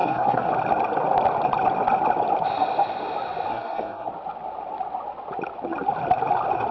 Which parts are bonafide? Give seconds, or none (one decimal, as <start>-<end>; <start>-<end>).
0.5-3.5; 4.1-6.7